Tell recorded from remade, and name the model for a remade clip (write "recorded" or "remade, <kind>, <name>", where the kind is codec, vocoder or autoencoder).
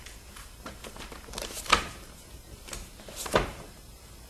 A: remade, vocoder, BigVGAN v2